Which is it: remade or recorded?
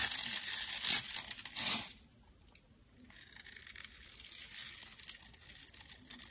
recorded